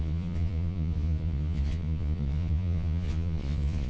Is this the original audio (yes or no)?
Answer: no